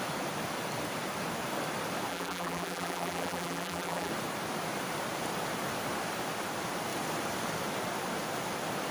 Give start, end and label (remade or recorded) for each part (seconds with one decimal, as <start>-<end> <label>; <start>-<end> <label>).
0.0-2.1 recorded; 2.1-4.1 remade; 4.1-8.9 recorded